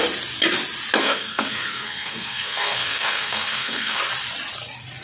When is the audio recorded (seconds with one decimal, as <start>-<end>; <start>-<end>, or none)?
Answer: 0.0-1.0; 4.0-5.0